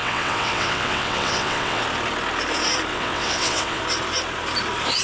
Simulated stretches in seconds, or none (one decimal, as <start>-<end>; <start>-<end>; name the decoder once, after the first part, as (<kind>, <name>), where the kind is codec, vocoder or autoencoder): 0.0-1.8 (vocoder, WaveNeXt); 2.9-3.8